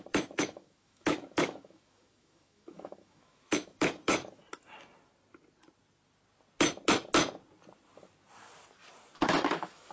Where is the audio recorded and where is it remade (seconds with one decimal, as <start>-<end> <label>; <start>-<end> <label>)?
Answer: 0.0-4.4 remade; 4.4-9.2 recorded; 9.2-9.9 remade